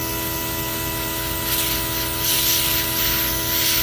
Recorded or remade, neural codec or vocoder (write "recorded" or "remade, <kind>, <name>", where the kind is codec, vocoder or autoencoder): recorded